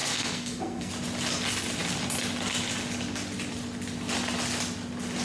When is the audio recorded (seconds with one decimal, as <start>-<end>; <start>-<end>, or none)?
0.9-5.2